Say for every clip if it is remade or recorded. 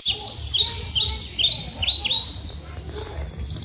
recorded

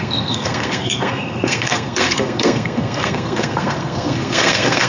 remade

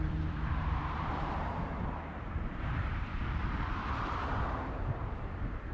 remade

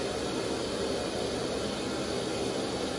recorded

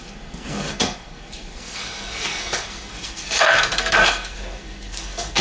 remade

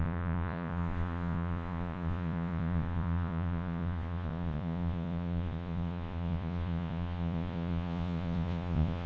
remade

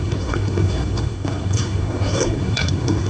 remade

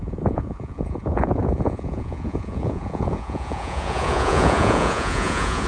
remade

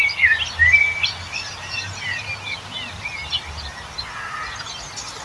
recorded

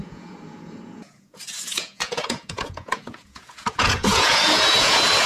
remade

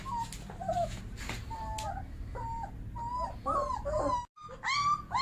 recorded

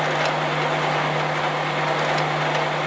recorded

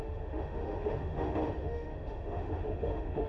remade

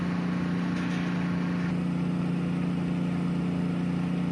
recorded